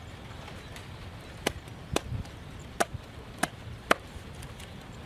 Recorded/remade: recorded